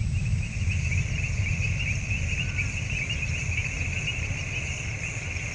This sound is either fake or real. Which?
real